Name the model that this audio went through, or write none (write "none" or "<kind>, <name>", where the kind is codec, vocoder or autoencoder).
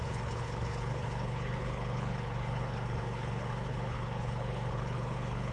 codec, HILCodec